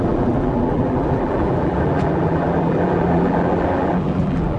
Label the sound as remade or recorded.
remade